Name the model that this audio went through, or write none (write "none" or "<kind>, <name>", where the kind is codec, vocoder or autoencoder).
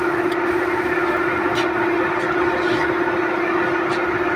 none